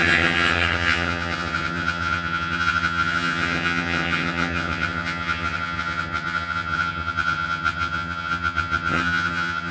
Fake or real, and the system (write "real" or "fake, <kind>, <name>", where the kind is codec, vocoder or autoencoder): fake, vocoder, HiFi-GAN